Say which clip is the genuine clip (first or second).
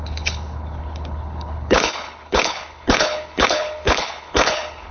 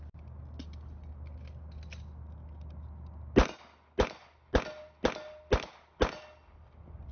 second